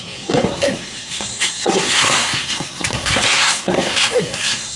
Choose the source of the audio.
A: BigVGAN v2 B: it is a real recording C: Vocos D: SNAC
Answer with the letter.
D